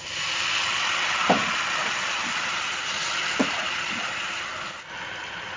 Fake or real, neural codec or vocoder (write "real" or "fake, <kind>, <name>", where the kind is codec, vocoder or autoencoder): real